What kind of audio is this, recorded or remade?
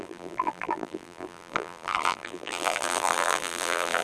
remade